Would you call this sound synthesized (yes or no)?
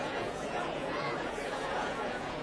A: yes